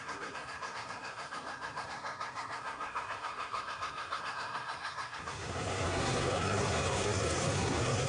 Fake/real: fake